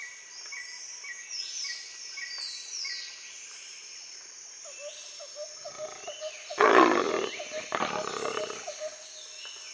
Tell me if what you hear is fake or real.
real